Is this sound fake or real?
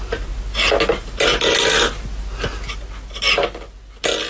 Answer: real